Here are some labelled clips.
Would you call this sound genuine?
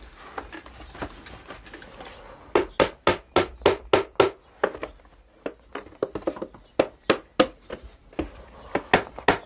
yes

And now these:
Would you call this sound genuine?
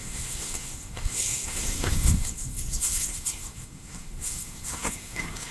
no